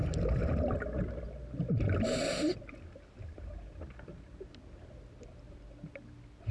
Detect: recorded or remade recorded